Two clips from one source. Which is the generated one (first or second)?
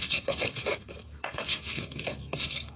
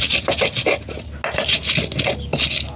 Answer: first